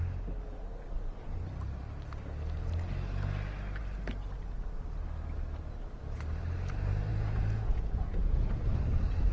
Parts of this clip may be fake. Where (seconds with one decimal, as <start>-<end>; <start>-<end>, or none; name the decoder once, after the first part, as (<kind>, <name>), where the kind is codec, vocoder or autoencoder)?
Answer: 7.1-8.5 (vocoder, Vocos)